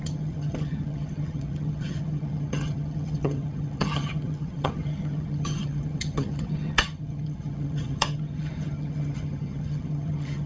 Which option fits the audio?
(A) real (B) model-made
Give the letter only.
B